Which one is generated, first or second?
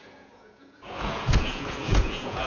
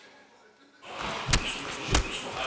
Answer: first